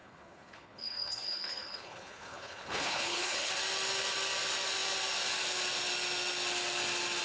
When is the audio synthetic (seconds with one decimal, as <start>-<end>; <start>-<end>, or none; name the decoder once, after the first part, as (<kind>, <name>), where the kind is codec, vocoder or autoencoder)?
0.0-3.5 (codec, HILCodec)

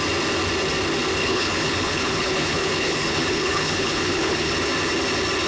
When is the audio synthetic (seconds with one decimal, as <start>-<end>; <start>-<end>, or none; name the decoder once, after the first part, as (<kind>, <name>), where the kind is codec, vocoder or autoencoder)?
1.2-4.5 (codec, HILCodec)